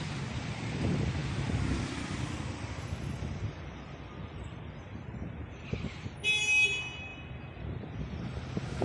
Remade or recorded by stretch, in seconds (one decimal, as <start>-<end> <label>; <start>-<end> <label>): 0.0-8.8 recorded